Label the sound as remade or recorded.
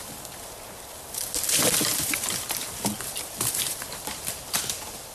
remade